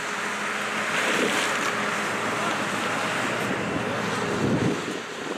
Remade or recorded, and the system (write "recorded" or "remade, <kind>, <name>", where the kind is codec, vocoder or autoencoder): recorded